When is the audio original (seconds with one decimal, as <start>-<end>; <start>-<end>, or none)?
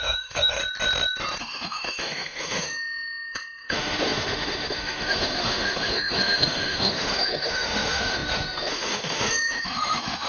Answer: 0.6-1.4